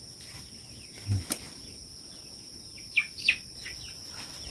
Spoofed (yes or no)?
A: no